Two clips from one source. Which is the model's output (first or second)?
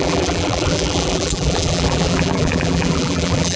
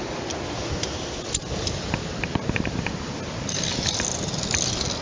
first